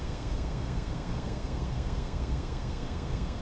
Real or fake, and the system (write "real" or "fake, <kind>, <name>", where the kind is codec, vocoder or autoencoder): fake, codec, SNAC